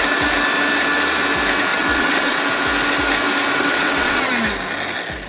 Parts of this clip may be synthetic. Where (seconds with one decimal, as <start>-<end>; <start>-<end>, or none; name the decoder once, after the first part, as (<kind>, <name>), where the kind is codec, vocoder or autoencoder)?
1.7-2.4 (vocoder, WaveNeXt); 3.5-4.3